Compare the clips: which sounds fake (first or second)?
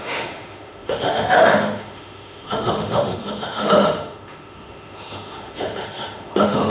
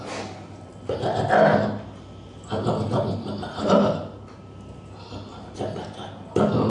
first